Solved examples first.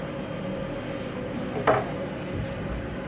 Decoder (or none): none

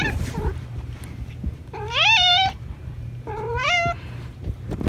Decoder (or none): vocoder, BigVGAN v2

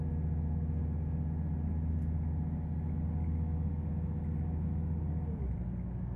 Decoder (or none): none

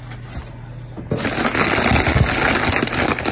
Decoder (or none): none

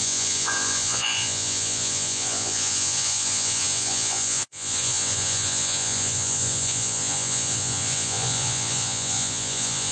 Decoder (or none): vocoder, Vocos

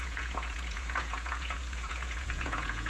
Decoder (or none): vocoder, Vocos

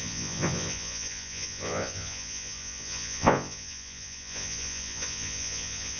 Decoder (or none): vocoder, Vocos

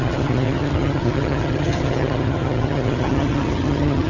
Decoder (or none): vocoder, HiFi-GAN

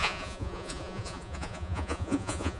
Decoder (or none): vocoder, Vocos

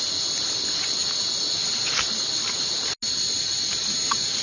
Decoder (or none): none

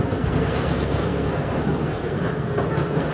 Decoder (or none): codec, SNAC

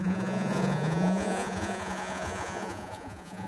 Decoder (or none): vocoder, Vocos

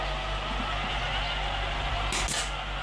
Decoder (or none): none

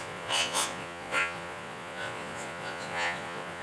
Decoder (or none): vocoder, Vocos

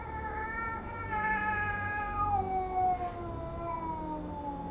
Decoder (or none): none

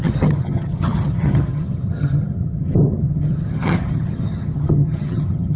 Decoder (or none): vocoder, HiFi-GAN